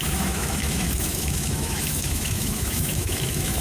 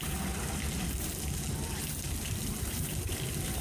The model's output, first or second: first